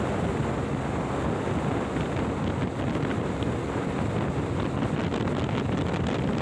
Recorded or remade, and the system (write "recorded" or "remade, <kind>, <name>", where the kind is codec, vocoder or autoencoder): recorded